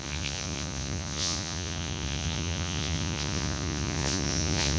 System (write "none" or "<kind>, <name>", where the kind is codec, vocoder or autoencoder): vocoder, Vocos